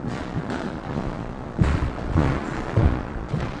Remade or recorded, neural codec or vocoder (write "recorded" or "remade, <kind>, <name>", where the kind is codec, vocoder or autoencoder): remade, vocoder, Vocos